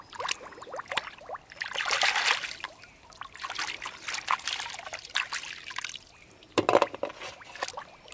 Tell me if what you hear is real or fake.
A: real